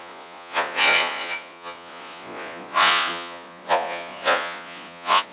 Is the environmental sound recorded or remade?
remade